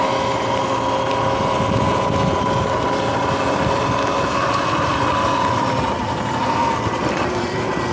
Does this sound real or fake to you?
real